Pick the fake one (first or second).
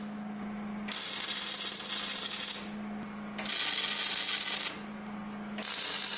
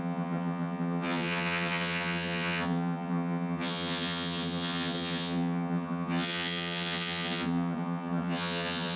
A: second